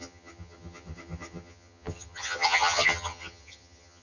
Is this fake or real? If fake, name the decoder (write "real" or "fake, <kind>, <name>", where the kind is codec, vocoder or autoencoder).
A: fake, vocoder, HiFi-GAN